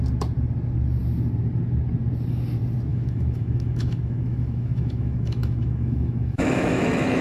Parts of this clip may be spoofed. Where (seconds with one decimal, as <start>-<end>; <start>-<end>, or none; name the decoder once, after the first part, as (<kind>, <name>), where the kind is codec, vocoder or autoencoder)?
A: 2.9-7.2 (autoencoder, DAC-VAE)